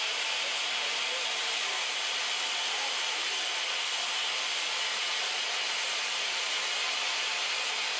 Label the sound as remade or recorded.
recorded